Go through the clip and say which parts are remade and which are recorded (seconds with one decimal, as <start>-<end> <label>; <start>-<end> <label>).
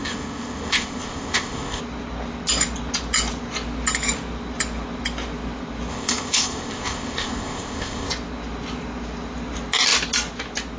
0.0-1.8 remade; 1.8-5.9 recorded; 5.9-8.1 remade; 8.1-10.8 recorded